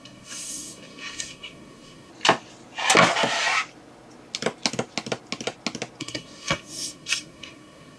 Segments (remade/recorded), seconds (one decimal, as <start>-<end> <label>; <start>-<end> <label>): 0.0-2.1 remade; 2.1-6.0 recorded; 6.0-8.0 remade